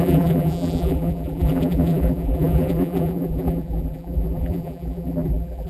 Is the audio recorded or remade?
remade